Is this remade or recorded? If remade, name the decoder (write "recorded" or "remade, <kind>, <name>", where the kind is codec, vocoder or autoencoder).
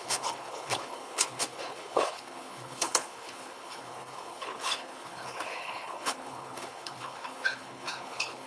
remade, codec, HILCodec